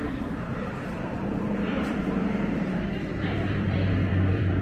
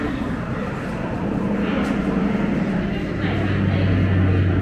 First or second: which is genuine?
second